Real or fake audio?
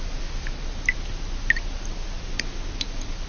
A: real